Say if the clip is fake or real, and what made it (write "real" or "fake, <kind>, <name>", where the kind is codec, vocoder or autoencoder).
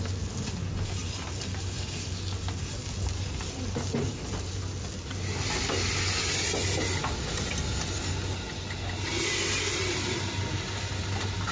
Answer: real